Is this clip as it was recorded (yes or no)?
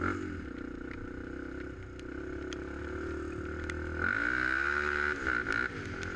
yes